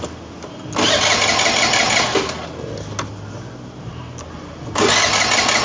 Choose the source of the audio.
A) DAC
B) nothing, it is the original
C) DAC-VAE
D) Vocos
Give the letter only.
B